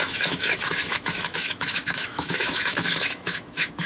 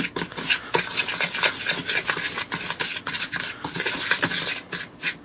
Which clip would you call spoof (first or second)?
first